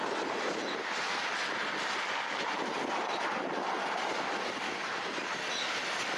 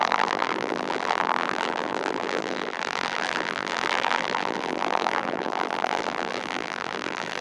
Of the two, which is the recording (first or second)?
first